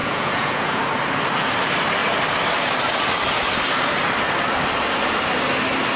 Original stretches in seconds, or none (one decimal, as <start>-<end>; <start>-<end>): 0.8-6.0